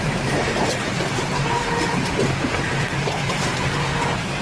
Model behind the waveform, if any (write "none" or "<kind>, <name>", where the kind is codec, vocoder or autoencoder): vocoder, BigVGAN v2